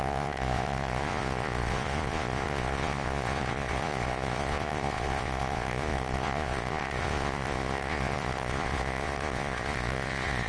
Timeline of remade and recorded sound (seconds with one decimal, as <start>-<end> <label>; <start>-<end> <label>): 0.0-10.5 remade